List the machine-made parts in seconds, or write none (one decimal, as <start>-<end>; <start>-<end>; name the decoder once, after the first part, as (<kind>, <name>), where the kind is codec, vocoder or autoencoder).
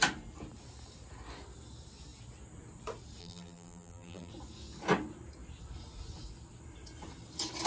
3.2-4.3 (vocoder, BigVGAN v2)